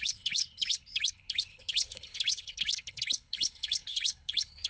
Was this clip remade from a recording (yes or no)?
yes